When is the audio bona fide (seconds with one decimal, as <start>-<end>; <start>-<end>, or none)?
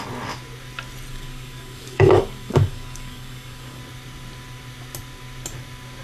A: 0.0-1.1; 3.8-6.0